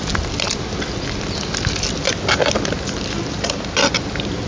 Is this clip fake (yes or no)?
no